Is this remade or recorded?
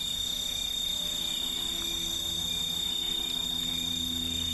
recorded